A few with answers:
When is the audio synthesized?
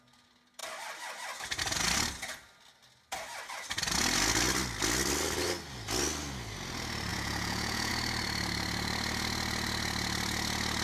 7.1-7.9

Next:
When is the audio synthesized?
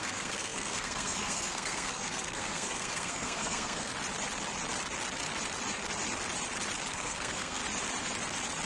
0.0-3.9; 6.9-7.6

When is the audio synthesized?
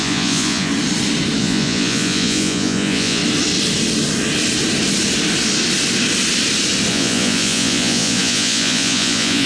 0.0-0.7; 1.4-3.2; 6.9-9.5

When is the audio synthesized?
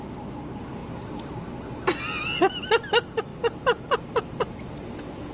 none